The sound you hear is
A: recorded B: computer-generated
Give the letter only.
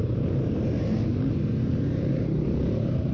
B